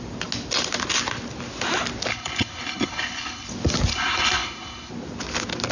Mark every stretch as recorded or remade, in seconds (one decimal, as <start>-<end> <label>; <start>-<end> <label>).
0.0-2.1 recorded; 2.1-3.5 remade; 3.5-3.9 recorded; 3.9-4.9 remade; 4.9-5.7 recorded